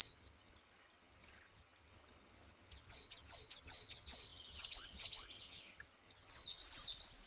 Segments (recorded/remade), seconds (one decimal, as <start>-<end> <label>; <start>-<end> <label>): 0.0-6.6 remade; 6.6-7.3 recorded